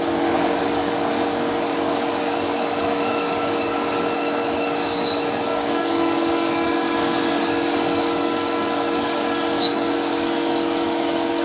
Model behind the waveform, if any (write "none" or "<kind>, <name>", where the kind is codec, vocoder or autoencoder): codec, DAC